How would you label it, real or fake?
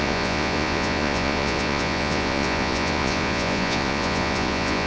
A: fake